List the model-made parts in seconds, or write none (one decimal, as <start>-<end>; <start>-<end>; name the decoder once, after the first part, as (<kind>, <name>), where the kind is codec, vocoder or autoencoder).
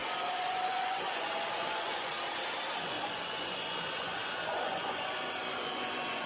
0.0-2.1 (vocoder, Vocos); 2.8-6.3